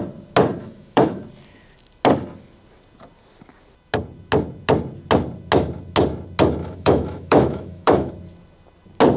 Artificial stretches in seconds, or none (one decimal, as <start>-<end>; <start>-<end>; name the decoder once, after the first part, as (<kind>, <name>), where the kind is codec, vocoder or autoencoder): 0.6-1.2 (autoencoder, DAC-VAE); 6.6-8.1